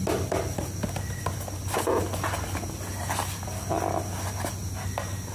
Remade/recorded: recorded